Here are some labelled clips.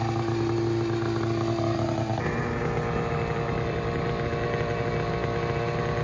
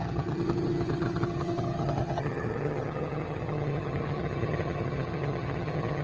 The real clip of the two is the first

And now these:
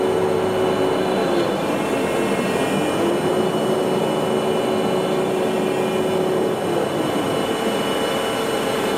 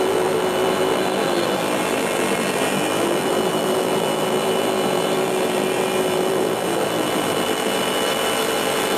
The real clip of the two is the first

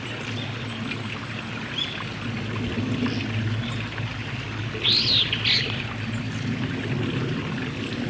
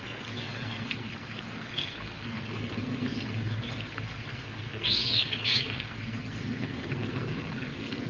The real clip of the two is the first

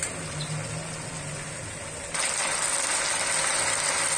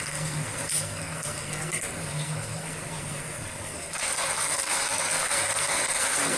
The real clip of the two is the first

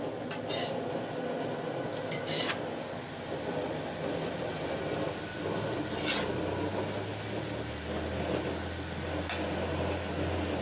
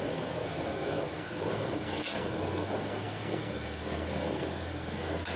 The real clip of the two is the first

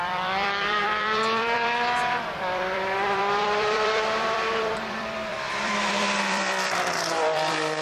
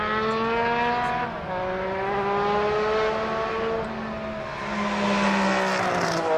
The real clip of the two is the second